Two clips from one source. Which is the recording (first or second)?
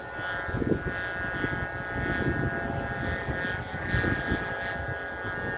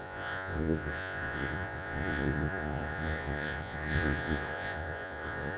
first